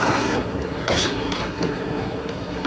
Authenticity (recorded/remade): remade